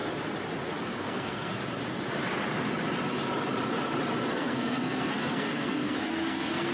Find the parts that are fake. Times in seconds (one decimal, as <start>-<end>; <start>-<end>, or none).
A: 0.8-1.5; 4.3-6.7